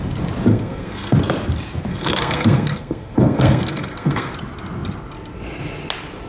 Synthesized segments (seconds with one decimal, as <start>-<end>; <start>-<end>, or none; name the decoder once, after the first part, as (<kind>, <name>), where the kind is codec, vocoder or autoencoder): 0.5-1.2 (codec, SNAC); 1.9-4.3